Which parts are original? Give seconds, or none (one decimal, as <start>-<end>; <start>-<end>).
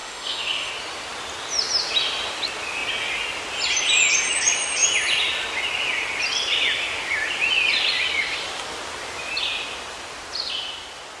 0.7-11.2